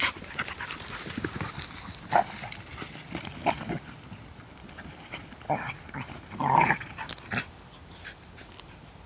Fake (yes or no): no